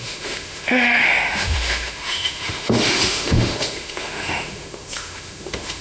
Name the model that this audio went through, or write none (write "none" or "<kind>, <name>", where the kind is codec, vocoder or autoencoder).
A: autoencoder, DAC-VAE